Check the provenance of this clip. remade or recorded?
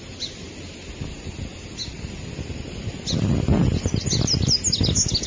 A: recorded